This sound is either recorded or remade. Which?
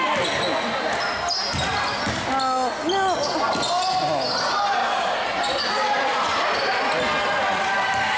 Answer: recorded